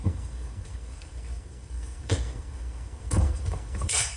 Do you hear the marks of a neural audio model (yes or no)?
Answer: yes